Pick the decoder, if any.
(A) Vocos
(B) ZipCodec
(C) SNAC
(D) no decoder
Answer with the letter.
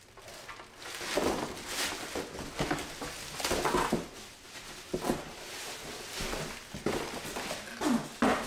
D